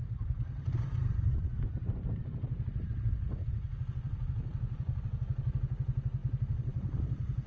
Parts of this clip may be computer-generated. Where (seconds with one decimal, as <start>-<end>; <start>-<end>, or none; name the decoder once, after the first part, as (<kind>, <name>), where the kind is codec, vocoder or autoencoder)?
0.0-2.9 (vocoder, BigVGAN v2)